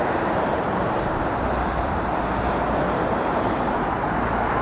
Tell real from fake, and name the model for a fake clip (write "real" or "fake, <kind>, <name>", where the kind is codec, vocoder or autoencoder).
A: fake, vocoder, BigVGAN v2